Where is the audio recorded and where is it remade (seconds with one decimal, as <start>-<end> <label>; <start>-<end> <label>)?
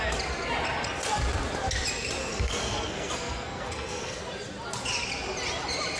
0.0-2.2 recorded; 2.2-4.2 remade; 4.2-6.0 recorded